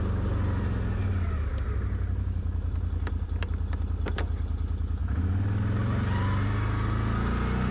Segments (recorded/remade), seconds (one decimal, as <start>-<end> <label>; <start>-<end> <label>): 0.0-7.7 recorded

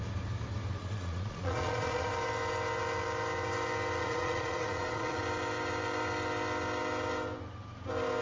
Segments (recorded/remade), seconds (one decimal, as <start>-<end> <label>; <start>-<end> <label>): 0.0-0.8 recorded; 0.8-2.1 remade; 2.1-4.0 recorded; 4.0-5.2 remade; 5.2-8.2 recorded

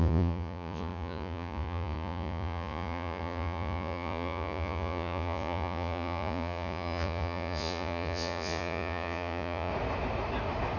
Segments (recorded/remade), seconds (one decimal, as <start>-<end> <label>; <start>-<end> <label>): 0.0-9.7 remade; 9.7-10.8 recorded